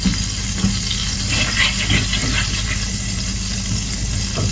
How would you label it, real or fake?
real